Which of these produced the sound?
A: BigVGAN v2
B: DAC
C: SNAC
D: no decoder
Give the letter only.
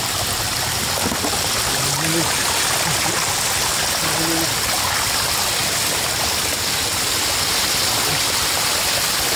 D